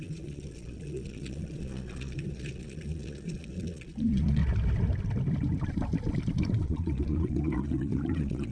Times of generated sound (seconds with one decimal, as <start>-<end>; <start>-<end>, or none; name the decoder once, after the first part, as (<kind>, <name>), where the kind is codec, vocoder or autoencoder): 0.0-4.4 (vocoder, Vocos); 6.6-8.5